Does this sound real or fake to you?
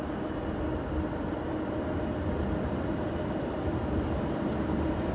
real